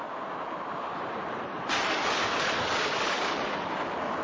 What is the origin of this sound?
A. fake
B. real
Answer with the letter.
B